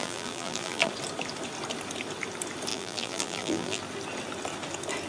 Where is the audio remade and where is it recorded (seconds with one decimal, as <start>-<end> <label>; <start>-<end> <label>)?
0.0-0.9 remade; 0.9-2.7 recorded; 2.7-3.8 remade; 3.8-5.1 recorded